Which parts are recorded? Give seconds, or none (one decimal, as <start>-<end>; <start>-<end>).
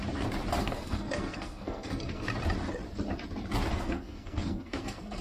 0.0-0.6; 2.3-3.7